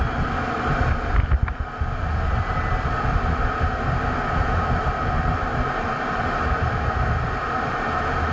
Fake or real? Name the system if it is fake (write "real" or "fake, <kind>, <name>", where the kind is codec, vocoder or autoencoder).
real